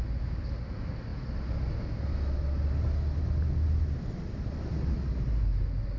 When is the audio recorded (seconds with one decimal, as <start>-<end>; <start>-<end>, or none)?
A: 0.0-6.0